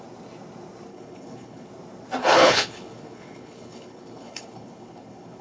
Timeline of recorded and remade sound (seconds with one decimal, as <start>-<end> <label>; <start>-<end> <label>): 0.0-0.9 recorded; 0.9-1.7 remade; 1.7-2.2 recorded; 2.2-5.4 remade